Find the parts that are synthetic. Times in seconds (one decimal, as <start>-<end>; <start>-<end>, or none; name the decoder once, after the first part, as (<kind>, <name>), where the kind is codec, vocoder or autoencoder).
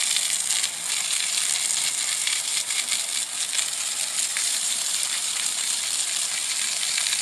2.2-2.8 (vocoder, BigVGAN v2); 4.3-5.8